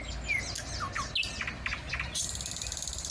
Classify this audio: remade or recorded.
recorded